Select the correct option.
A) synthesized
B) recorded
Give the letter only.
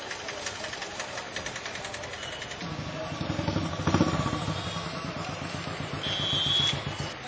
B